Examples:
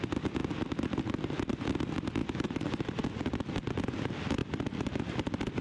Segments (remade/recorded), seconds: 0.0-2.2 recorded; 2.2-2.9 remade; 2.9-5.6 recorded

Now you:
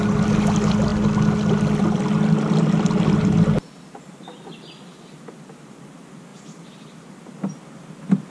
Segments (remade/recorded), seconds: 0.0-8.3 recorded

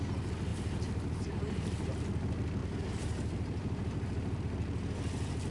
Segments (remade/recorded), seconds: 0.0-0.5 recorded; 0.5-2.0 remade; 2.0-2.6 recorded; 2.6-4.4 remade; 4.4-5.5 recorded

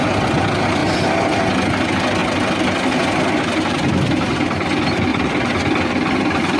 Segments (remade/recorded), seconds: 0.0-0.8 recorded; 0.8-1.4 remade; 1.4-2.2 recorded; 2.2-3.4 remade; 3.4-5.1 recorded; 5.1-6.6 remade